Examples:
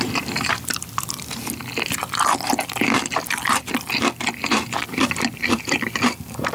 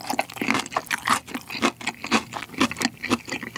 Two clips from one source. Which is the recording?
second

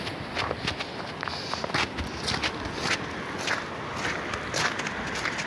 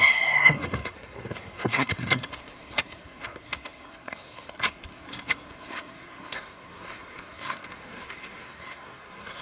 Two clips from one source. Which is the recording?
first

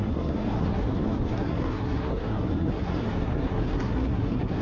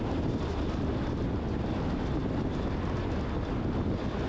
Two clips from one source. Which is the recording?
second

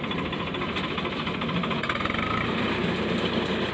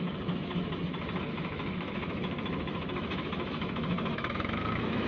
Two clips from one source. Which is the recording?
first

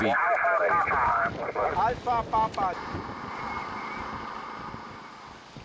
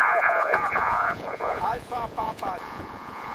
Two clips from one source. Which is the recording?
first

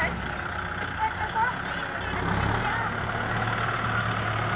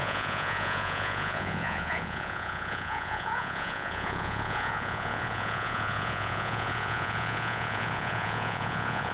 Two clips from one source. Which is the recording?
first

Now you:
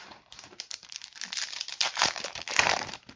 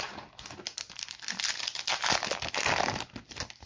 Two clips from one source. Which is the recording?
second